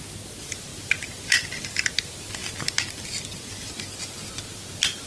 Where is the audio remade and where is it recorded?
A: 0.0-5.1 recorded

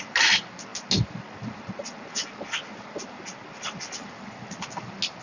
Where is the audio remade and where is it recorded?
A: 0.0-5.2 recorded